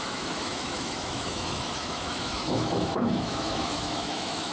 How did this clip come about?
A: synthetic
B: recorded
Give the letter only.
A